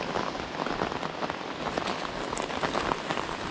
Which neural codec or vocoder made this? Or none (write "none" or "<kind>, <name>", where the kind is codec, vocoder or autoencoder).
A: none